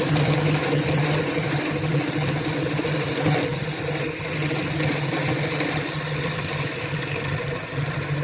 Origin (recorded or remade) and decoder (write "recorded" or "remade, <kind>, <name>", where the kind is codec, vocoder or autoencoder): recorded